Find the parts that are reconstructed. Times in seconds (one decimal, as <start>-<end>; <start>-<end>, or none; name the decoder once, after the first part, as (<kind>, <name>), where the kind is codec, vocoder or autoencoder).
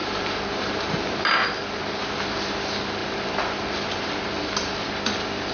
0.0-1.3 (vocoder, BigVGAN v2); 3.0-4.9